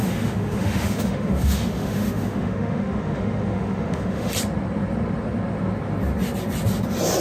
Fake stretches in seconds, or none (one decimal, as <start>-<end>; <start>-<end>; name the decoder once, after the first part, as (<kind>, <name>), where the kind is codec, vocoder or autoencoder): 0.0-4.3 (autoencoder, DAC-VAE)